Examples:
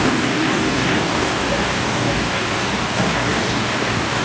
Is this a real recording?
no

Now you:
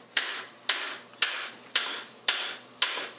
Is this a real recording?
yes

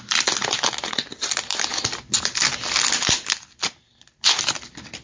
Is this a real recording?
yes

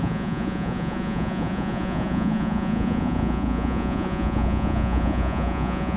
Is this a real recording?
no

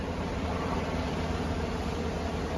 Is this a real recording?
yes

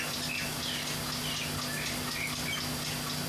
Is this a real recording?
yes